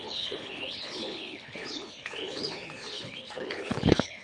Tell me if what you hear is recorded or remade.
remade